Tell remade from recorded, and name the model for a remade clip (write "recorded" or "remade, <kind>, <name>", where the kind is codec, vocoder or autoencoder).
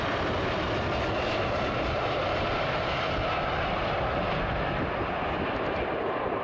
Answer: recorded